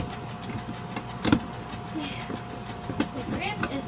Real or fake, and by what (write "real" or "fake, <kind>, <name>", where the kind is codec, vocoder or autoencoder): real